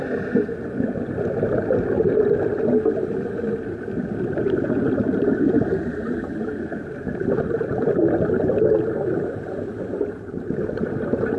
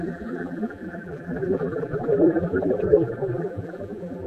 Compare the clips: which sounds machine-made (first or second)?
second